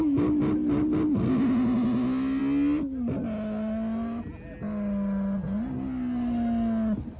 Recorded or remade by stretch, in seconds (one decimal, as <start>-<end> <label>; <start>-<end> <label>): 0.0-7.2 recorded

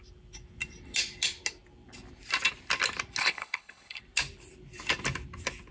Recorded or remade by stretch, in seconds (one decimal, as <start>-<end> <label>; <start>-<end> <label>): 0.0-3.2 recorded; 3.2-4.0 remade; 4.0-5.7 recorded

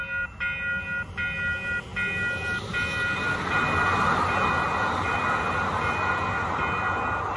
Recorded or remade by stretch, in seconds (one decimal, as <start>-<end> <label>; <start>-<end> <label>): 0.0-7.4 recorded

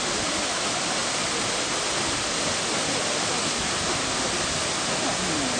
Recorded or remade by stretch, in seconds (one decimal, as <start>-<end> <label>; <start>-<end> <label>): 0.0-5.6 recorded

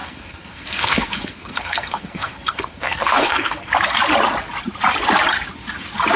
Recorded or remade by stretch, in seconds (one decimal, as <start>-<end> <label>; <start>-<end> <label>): 0.0-3.7 remade; 3.7-6.2 recorded